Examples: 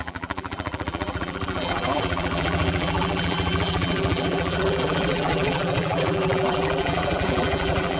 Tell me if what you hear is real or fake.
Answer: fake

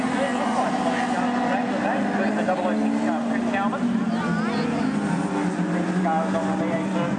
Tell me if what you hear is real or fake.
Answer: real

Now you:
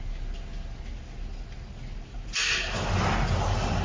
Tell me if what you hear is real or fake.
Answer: real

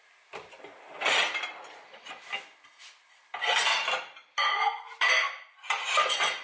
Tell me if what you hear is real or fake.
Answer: real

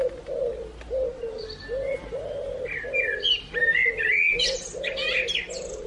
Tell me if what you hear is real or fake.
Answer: real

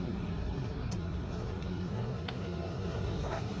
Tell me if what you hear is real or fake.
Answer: fake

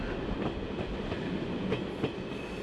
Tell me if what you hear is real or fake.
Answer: real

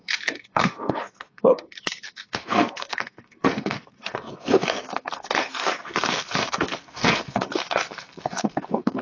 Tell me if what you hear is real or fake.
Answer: fake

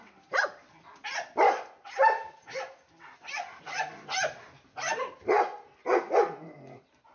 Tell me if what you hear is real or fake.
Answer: real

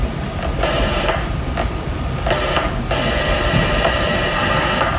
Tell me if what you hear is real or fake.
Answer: real